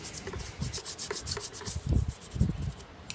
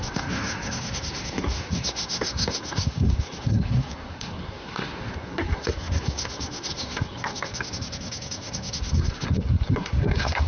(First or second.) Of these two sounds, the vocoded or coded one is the second